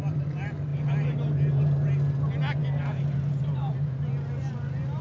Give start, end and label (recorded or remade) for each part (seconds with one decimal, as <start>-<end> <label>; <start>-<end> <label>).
0.0-5.0 recorded

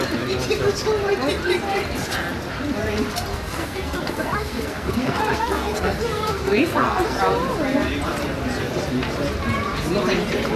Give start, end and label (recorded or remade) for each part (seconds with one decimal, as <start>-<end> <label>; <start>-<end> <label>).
0.0-3.3 recorded; 3.3-7.2 remade; 7.2-10.6 recorded

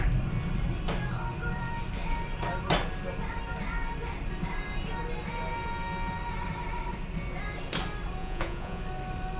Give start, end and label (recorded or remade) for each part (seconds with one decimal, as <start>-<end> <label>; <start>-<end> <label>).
0.0-8.2 recorded; 8.2-8.8 remade; 8.8-9.4 recorded

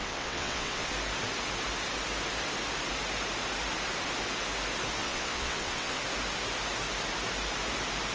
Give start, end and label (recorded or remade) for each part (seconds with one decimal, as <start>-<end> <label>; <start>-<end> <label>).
0.0-0.9 remade; 0.9-5.0 recorded; 5.0-6.0 remade; 6.0-8.1 recorded